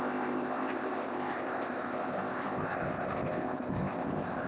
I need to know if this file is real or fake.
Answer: fake